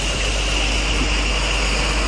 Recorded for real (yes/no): yes